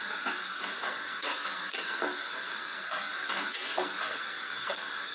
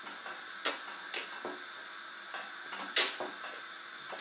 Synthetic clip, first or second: first